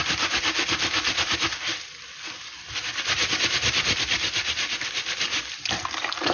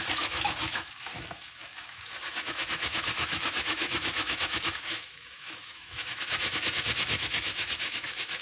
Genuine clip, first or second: first